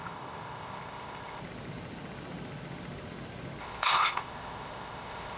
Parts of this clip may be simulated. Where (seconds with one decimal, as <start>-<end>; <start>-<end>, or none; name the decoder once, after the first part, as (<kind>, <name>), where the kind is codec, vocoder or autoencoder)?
0.0-1.4 (codec, ZipCodec); 3.6-5.4

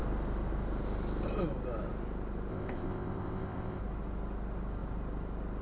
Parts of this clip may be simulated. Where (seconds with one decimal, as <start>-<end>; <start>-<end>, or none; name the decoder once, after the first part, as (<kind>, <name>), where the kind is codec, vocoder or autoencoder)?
2.5-3.8 (codec, ZipCodec)

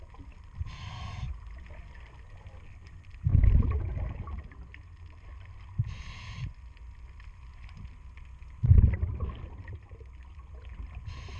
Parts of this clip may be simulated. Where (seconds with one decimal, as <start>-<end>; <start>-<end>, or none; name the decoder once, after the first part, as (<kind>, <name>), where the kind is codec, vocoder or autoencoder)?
none

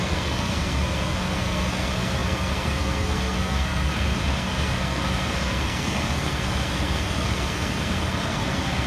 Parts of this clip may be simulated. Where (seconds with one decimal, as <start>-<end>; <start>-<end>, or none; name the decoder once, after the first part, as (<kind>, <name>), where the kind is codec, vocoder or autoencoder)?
0.0-8.9 (codec, SNAC)

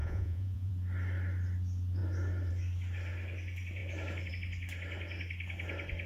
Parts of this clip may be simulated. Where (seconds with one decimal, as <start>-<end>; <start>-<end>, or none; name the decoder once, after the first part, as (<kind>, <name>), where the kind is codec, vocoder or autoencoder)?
0.0-0.7 (vocoder, Vocos)